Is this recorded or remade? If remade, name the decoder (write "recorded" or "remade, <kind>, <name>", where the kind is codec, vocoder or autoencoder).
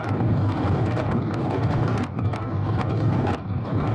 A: remade, codec, DAC